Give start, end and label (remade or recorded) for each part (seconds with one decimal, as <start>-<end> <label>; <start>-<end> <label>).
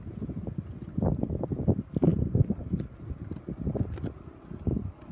0.0-5.1 recorded